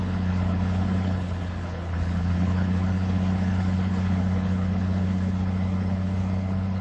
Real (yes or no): no